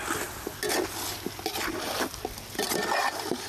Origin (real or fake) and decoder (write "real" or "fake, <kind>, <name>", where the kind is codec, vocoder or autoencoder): real